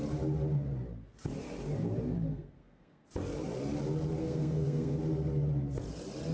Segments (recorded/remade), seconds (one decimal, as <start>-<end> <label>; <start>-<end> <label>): 0.0-2.3 recorded; 2.3-3.1 remade; 3.1-4.2 recorded; 4.2-5.0 remade; 5.0-6.3 recorded

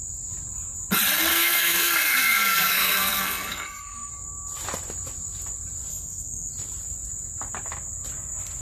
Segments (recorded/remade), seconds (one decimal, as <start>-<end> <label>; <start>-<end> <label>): 0.0-1.3 recorded; 1.3-4.1 remade; 4.1-5.9 recorded; 5.9-6.5 remade; 6.5-8.6 recorded

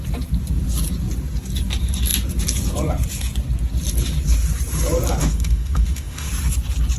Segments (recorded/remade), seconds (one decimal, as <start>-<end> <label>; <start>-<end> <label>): 0.0-5.2 recorded; 5.2-6.3 remade; 6.3-7.0 recorded

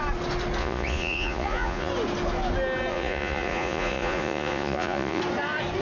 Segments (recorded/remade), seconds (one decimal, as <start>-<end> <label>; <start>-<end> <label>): 0.0-0.6 recorded; 0.6-1.9 remade; 1.9-2.9 recorded; 2.9-5.2 remade; 5.2-5.8 recorded

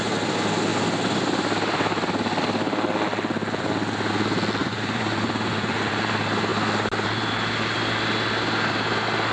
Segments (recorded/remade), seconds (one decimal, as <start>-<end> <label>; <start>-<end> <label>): 0.0-4.6 recorded; 4.6-6.1 remade; 6.1-9.3 recorded